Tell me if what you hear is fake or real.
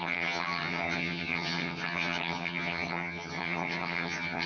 fake